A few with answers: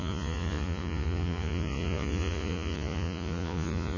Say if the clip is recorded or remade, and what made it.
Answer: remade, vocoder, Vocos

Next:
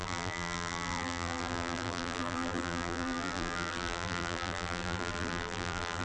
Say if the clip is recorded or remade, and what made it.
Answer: remade, vocoder, BigVGAN v2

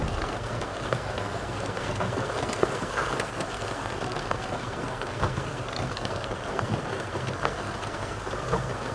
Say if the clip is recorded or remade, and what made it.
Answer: remade, codec, SNAC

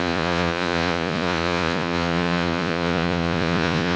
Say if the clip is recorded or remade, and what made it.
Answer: remade, vocoder, Vocos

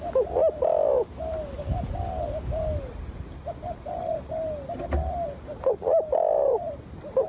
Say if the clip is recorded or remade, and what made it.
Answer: recorded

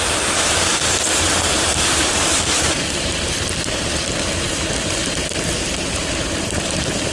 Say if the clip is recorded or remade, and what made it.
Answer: remade, vocoder, BigVGAN v2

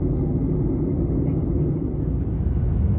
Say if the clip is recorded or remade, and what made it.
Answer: recorded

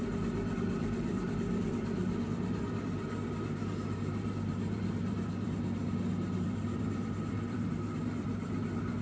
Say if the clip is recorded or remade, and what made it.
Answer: remade, vocoder, BigVGAN v2